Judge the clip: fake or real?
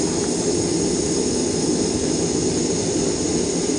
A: real